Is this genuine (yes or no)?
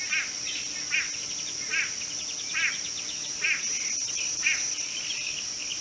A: yes